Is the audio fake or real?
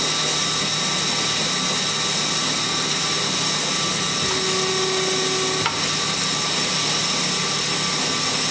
real